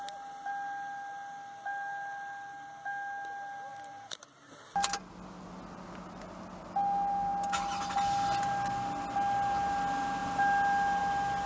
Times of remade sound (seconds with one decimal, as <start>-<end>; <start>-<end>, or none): none